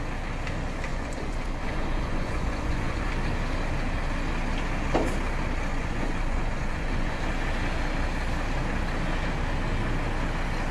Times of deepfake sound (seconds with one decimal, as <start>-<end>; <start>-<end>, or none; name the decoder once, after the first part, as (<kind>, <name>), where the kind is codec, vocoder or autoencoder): 0.9-3.1 (vocoder, Vocos); 5.7-7.2